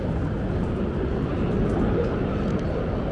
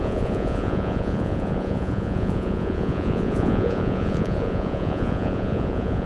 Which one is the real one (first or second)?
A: first